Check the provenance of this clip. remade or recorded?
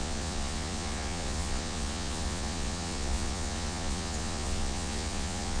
remade